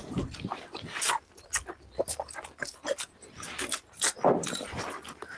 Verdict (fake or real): real